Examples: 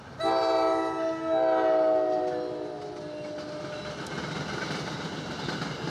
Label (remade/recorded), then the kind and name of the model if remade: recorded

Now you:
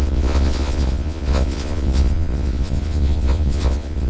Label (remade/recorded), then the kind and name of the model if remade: remade, vocoder, Vocos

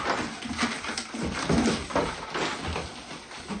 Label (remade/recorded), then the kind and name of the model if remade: recorded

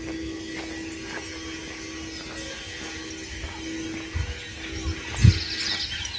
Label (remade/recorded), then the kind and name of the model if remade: recorded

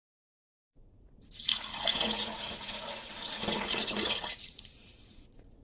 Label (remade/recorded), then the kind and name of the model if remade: remade, vocoder, Vocos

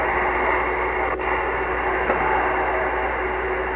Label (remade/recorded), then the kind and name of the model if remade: recorded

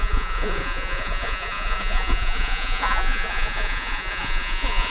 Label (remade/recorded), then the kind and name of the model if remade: remade, vocoder, Vocos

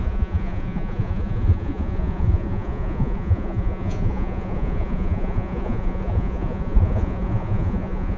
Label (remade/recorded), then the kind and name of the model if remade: remade, vocoder, Vocos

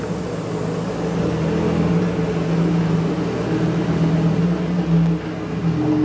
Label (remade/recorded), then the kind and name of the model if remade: recorded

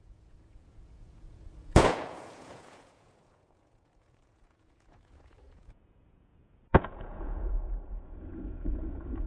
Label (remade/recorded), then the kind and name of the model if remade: remade, vocoder, Vocos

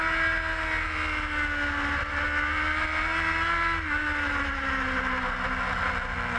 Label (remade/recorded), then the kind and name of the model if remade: recorded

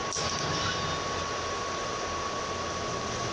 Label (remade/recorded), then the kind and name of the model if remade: recorded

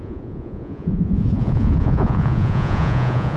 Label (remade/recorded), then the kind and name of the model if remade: remade, vocoder, Vocos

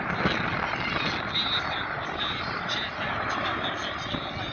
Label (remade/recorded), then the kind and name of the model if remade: recorded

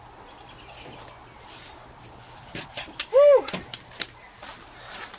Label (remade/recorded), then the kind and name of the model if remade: recorded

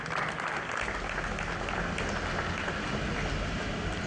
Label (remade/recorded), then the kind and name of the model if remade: recorded